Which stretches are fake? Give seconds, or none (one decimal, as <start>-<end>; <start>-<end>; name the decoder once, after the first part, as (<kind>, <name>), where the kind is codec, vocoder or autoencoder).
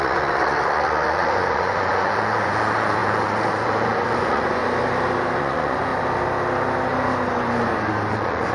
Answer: 0.0-4.6 (vocoder, Vocos); 5.4-5.9; 8.1-8.5